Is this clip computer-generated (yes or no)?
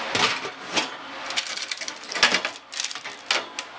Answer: no